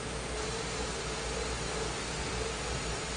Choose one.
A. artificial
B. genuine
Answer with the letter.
B